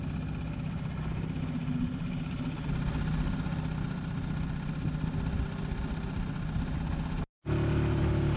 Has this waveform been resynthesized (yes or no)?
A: no